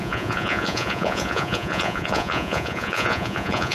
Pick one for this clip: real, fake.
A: fake